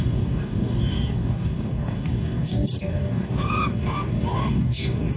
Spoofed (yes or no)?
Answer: yes